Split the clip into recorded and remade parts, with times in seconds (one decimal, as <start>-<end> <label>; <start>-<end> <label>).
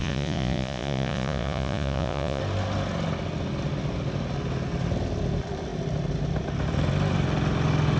0.0-2.4 remade; 2.4-8.0 recorded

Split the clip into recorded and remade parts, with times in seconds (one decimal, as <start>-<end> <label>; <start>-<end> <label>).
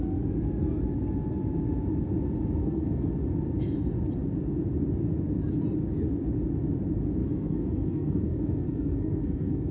0.0-2.6 recorded; 2.6-3.1 remade; 3.1-7.2 recorded; 7.2-9.7 remade